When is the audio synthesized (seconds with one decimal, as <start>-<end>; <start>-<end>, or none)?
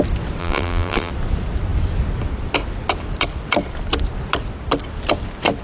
0.4-1.1